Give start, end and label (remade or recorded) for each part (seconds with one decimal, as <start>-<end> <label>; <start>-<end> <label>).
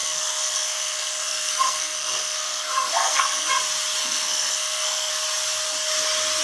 0.0-3.5 remade; 3.5-4.0 recorded; 4.0-5.1 remade; 5.1-6.4 recorded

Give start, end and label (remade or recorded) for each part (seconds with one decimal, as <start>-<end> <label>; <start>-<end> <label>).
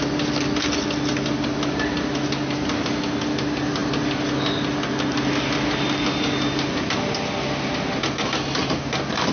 0.0-9.3 recorded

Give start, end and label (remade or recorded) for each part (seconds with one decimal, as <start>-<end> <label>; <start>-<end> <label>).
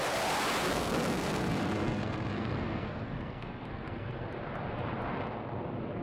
0.0-0.7 recorded; 0.7-4.3 remade; 4.3-6.0 recorded